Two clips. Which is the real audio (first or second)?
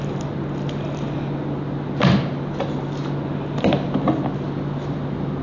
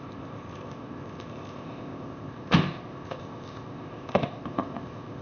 first